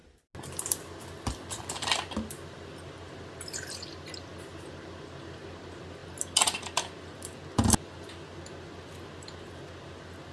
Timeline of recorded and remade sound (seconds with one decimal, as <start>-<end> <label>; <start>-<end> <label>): 0.0-10.3 recorded